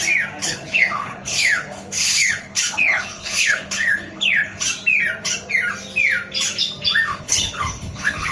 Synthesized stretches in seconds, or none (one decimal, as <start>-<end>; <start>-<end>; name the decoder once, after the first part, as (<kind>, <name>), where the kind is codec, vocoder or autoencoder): 0.4-4.6 (codec, HILCodec); 7.1-8.3